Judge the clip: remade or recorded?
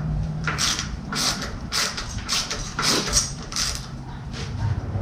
remade